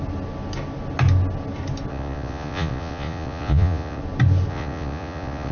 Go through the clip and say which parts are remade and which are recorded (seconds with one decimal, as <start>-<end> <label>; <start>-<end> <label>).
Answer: 0.0-1.9 recorded; 1.9-4.0 remade; 4.0-4.5 recorded; 4.5-5.5 remade